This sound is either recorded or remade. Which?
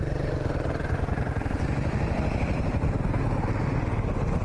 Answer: recorded